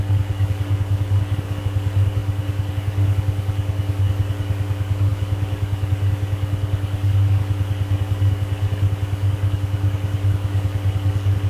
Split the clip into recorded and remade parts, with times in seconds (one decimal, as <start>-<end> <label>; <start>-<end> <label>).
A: 0.0-11.5 remade